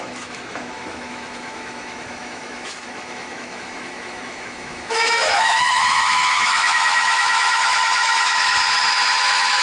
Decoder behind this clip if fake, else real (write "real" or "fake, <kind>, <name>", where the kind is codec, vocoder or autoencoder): fake, autoencoder, DAC-VAE